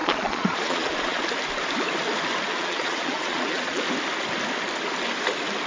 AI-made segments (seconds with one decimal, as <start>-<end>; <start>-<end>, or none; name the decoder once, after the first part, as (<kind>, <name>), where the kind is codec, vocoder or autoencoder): 0.0-1.2 (vocoder, Vocos); 2.5-3.8